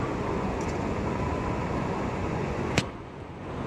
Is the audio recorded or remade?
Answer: remade